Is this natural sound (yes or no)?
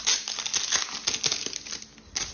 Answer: yes